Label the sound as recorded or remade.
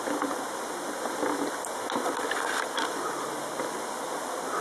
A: recorded